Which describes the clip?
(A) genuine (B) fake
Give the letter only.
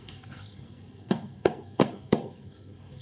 B